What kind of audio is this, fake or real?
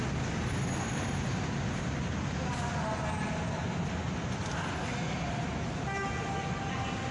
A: real